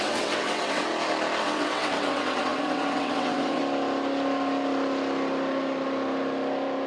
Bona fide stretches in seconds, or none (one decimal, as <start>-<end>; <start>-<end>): 0.9-1.4; 3.6-6.9